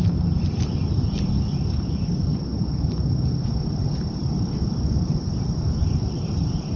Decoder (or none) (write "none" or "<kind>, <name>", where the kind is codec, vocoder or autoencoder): none